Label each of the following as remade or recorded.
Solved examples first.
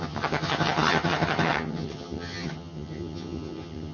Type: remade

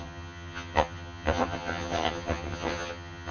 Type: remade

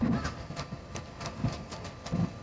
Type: recorded